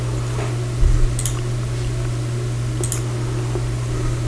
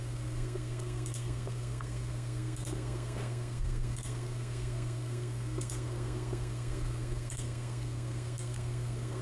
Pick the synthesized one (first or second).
second